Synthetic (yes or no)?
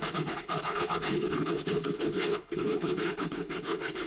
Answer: yes